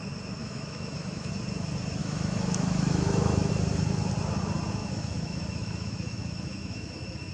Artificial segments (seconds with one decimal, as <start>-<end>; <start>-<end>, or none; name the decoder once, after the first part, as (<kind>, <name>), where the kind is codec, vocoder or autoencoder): 0.4-1.3 (autoencoder, DAC-VAE); 2.0-3.5; 4.8-7.3